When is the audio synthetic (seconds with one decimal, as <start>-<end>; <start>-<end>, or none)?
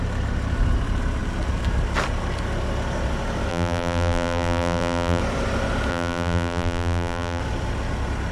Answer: 3.5-5.2; 5.9-7.4